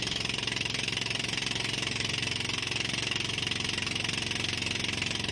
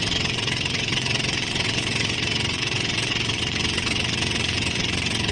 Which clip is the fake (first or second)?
second